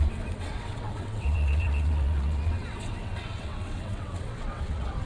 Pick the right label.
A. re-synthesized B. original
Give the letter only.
A